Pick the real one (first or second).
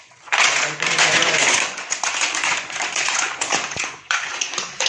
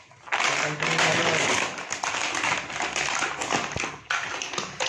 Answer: second